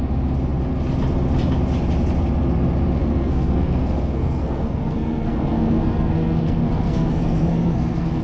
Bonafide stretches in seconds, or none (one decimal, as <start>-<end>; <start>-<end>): 0.0-3.0